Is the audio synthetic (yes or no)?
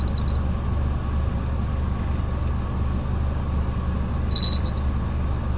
no